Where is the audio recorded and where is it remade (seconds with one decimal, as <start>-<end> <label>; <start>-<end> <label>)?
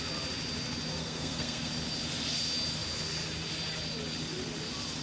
0.0-1.0 recorded; 1.0-1.7 remade; 1.7-5.0 recorded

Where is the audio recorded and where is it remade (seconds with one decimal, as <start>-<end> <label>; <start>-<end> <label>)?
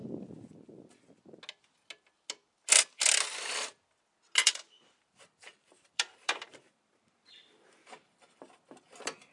0.0-4.4 recorded; 4.4-7.9 remade; 7.9-9.3 recorded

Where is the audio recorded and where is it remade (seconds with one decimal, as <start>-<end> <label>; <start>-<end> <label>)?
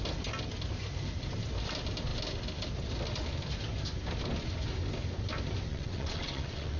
0.0-5.7 recorded; 5.7-6.8 remade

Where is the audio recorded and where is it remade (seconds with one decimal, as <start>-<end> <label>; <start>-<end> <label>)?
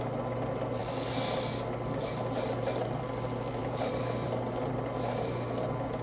0.0-6.0 recorded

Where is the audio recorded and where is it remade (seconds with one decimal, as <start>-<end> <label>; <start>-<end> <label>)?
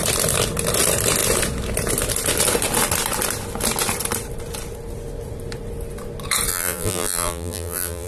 0.0-6.5 recorded; 6.5-8.1 remade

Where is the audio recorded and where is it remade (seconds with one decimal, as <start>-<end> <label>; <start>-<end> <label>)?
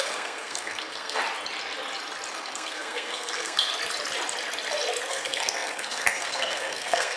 0.0-1.2 remade; 1.2-2.3 recorded; 2.3-3.7 remade; 3.7-5.1 recorded; 5.1-7.2 remade